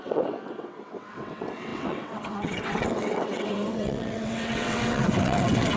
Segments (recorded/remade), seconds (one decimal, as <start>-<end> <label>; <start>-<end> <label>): 0.0-5.8 remade